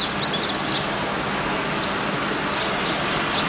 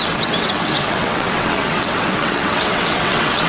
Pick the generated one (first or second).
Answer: second